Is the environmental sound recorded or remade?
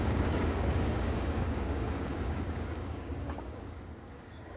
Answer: remade